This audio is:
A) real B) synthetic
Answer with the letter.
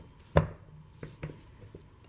A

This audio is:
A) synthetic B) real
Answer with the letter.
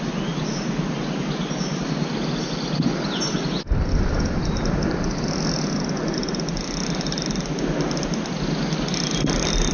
B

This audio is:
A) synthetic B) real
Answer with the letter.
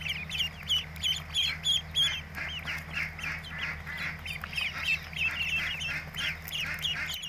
B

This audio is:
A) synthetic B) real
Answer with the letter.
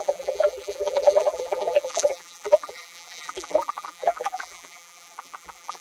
A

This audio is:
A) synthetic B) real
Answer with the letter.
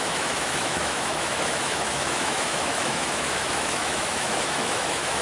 A